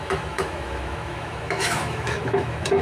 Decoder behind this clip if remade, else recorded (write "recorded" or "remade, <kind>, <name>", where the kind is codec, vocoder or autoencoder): remade, autoencoder, DAC-VAE